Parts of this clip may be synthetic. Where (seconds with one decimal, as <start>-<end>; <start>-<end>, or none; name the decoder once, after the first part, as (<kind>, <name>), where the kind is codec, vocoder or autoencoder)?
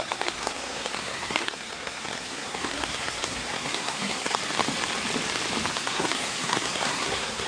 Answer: 0.0-4.4 (codec, SNAC); 5.7-7.5